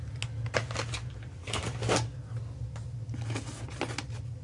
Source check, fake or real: real